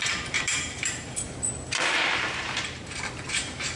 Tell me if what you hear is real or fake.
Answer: fake